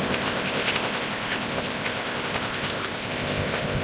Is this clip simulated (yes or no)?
yes